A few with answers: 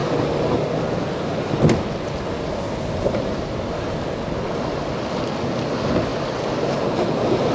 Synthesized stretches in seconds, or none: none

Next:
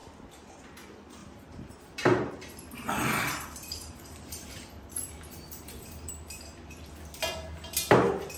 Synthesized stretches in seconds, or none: 1.2-6.1 (vocoder, BigVGAN v2)

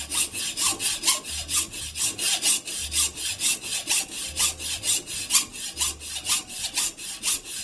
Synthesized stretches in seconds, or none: none

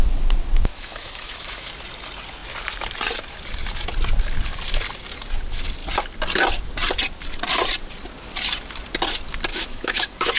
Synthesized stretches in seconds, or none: 0.7-1.7 (autoencoder, DAC-VAE); 9.5-10.4

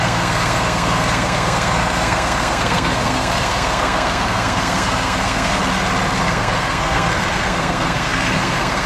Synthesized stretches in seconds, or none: 0.0-5.6 (codec, SNAC); 6.2-8.9